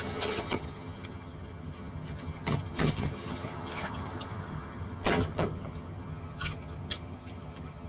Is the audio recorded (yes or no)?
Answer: no